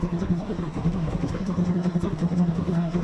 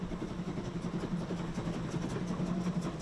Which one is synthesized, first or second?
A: first